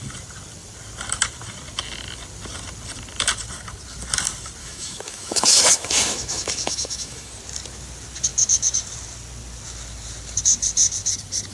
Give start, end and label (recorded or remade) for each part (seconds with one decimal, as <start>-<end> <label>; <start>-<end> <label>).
0.0-4.6 recorded; 4.6-7.3 remade; 7.3-11.5 recorded